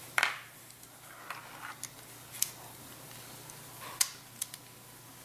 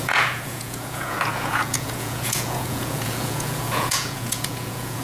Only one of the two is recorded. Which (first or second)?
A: first